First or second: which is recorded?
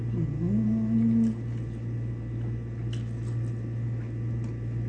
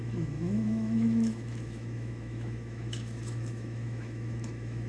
first